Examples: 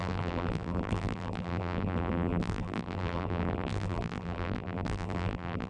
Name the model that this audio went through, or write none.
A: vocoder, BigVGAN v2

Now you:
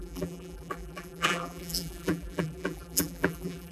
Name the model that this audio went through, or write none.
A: vocoder, BigVGAN v2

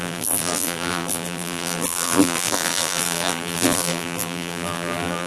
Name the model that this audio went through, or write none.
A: vocoder, BigVGAN v2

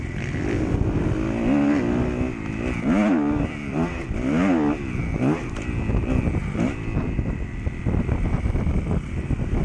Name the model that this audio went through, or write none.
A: none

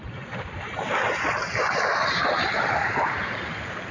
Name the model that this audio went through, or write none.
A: none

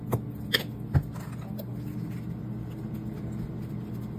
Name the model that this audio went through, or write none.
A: none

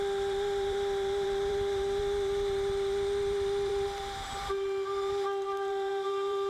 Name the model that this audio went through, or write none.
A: vocoder, BigVGAN v2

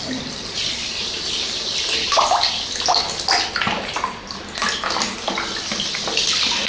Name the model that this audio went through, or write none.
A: none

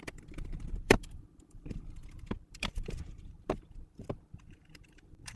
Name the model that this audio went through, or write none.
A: vocoder, BigVGAN v2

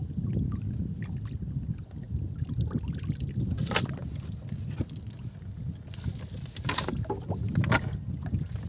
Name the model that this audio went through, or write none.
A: none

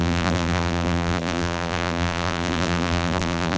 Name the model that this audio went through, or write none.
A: vocoder, BigVGAN v2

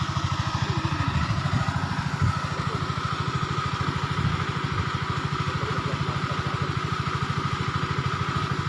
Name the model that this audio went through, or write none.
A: none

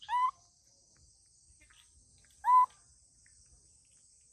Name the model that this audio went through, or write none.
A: none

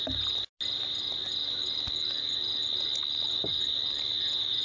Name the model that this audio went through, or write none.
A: none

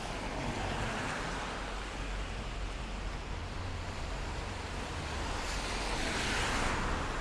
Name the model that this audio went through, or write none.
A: none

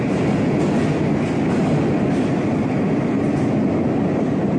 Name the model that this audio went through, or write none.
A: none